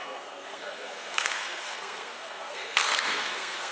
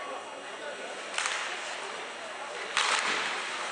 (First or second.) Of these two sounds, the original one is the second